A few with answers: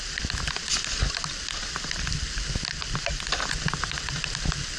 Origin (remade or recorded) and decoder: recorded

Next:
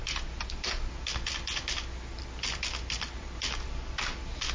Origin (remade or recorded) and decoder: recorded